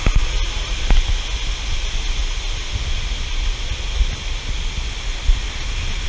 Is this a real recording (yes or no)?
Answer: yes